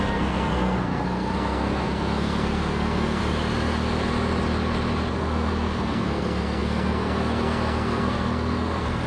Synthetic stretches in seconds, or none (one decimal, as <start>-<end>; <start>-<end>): 0.0-3.2; 5.1-9.1